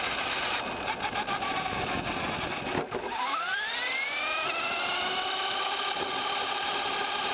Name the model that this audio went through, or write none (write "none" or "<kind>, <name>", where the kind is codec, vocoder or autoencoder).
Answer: none